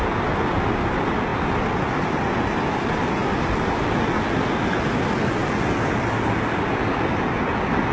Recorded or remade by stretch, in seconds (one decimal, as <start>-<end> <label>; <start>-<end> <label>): 0.0-7.9 recorded